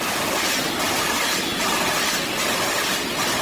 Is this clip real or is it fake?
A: real